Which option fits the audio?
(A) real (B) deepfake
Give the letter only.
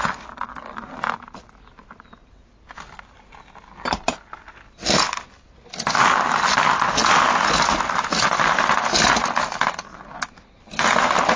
A